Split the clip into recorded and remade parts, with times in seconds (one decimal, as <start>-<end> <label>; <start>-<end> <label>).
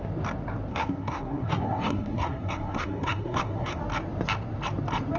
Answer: 0.0-0.7 recorded; 0.7-3.8 remade; 3.8-5.2 recorded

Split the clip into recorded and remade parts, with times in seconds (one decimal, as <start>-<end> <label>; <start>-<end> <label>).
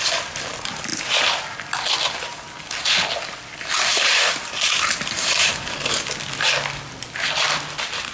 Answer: 0.0-0.9 recorded; 0.9-1.4 remade; 1.4-3.9 recorded; 3.9-6.1 remade; 6.1-8.1 recorded